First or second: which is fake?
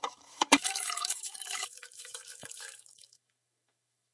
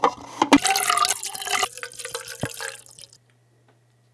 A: first